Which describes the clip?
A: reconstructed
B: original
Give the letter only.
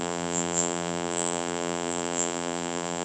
A